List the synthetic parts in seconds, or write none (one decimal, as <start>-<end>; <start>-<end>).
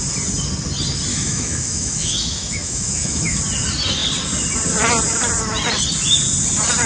1.1-3.4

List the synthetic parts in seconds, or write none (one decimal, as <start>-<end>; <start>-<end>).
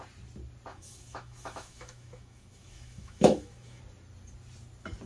0.7-3.8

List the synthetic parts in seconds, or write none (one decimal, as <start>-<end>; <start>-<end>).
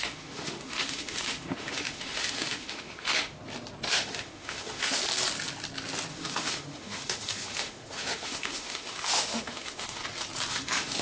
0.0-3.4; 3.9-5.0; 6.1-10.0; 10.5-11.0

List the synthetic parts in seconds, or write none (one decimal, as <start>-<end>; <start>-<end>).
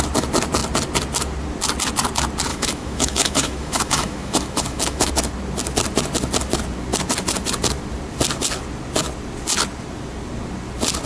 2.5-5.1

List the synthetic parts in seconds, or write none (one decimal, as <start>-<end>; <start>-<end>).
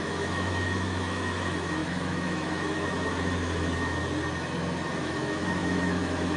0.0-4.0; 5.0-6.4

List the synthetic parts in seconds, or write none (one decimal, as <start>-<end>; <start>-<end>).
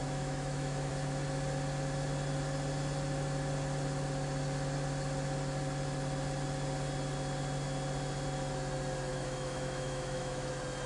0.0-0.9; 9.1-10.5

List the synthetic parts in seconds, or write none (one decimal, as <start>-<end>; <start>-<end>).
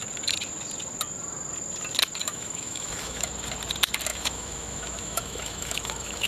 2.2-3.3; 4.1-6.3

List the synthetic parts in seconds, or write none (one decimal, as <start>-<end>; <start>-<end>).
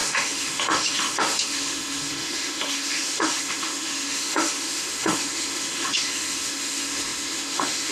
0.0-7.9